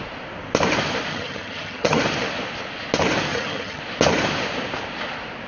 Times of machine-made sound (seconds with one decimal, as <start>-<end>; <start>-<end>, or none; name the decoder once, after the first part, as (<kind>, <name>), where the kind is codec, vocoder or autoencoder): 1.1-2.0 (vocoder, HiFi-GAN); 3.3-3.8